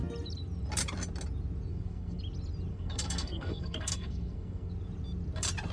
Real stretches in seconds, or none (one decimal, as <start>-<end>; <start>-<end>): 0.0-1.7; 2.2-2.7; 4.7-5.7